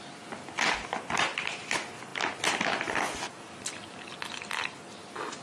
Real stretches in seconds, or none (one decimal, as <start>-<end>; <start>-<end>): 0.0-5.4